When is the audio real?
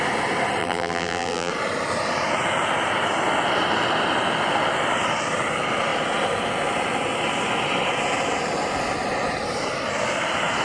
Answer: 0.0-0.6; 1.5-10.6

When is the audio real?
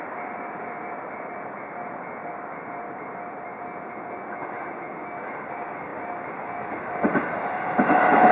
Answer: 0.0-2.2; 3.8-8.3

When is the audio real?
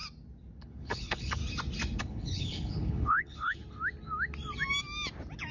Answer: 0.0-0.6; 1.4-2.0; 3.6-5.5